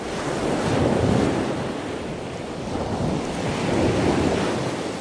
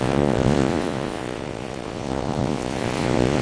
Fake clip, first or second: second